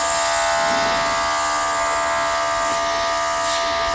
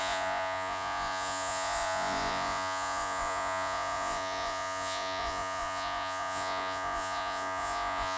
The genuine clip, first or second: first